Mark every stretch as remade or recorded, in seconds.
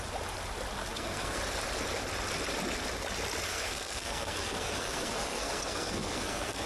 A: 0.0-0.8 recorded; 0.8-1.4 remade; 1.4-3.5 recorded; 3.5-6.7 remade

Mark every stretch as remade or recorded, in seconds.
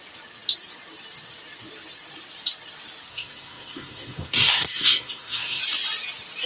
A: 0.0-3.1 recorded; 3.1-5.6 remade; 5.6-6.5 recorded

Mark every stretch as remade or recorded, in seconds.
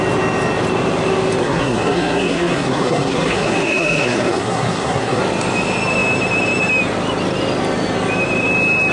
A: 0.0-1.4 recorded; 1.4-5.2 remade; 5.2-8.9 recorded